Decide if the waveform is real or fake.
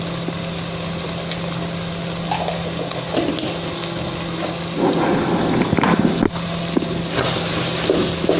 real